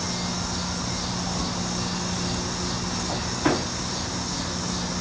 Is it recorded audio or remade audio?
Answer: recorded